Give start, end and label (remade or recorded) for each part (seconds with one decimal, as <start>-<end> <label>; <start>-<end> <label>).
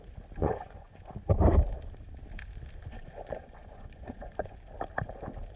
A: 0.0-0.4 recorded; 0.4-1.0 remade; 1.0-2.9 recorded; 2.9-4.6 remade; 4.6-5.6 recorded